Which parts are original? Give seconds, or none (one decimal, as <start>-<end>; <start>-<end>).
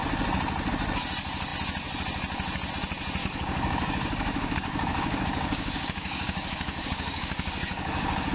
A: 0.0-3.2